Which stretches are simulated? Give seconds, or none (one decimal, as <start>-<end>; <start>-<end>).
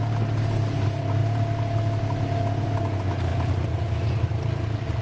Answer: none